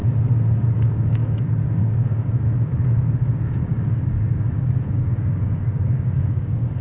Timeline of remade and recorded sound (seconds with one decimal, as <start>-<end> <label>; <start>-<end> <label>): 0.0-0.7 recorded; 0.7-6.8 remade